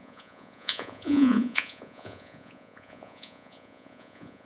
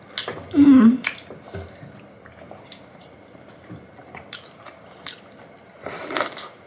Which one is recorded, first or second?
second